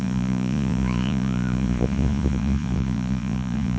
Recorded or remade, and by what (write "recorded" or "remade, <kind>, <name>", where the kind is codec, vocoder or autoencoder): remade, vocoder, Vocos